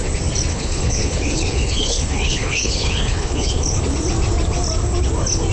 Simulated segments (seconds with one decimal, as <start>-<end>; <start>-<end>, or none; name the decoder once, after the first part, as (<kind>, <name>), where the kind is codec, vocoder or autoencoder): 0.5-3.8 (codec, HILCodec)